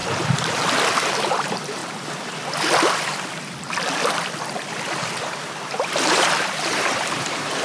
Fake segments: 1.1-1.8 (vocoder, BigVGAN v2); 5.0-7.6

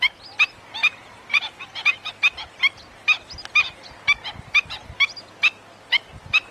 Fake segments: 0.8-2.1 (vocoder, BigVGAN v2)